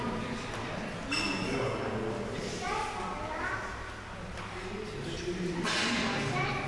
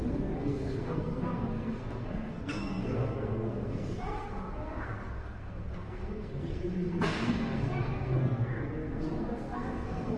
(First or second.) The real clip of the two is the first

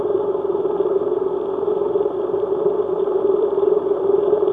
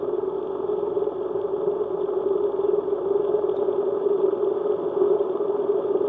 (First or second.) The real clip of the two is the second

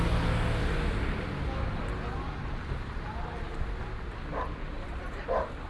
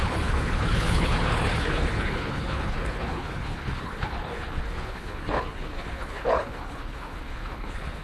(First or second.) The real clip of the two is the first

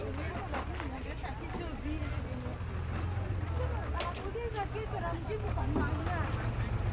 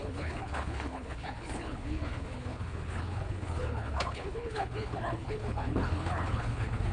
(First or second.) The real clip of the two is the first